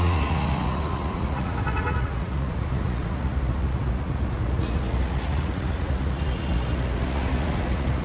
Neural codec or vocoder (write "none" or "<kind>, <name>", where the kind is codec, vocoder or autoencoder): vocoder, Vocos